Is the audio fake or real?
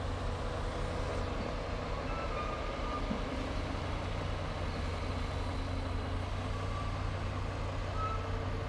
real